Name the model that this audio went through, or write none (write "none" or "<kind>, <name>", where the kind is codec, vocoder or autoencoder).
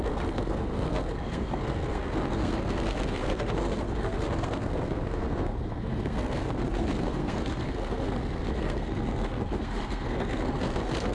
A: codec, SNAC